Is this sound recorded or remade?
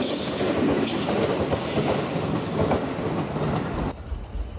recorded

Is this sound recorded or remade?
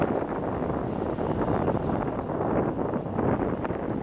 recorded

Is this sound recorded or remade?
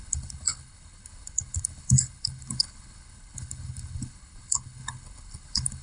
remade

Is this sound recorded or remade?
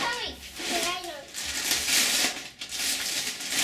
recorded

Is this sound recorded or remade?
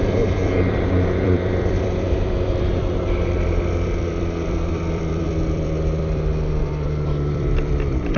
remade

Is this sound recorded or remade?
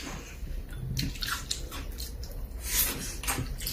recorded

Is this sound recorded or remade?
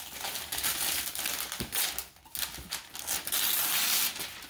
recorded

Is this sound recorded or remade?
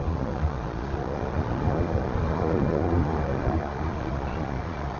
remade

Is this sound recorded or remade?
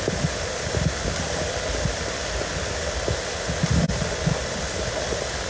recorded